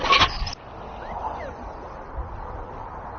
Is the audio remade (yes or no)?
no